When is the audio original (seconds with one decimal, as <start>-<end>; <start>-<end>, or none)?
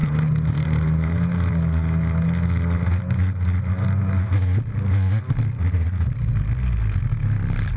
1.1-7.8